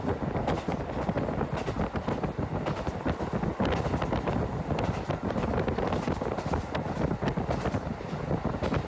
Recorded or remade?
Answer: recorded